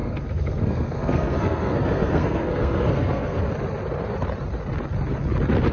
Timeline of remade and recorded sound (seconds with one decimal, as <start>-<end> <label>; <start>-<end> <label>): 0.0-3.4 remade; 3.4-5.7 recorded